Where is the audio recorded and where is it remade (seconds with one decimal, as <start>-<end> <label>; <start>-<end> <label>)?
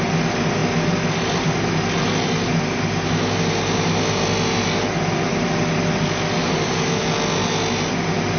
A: 0.0-8.4 recorded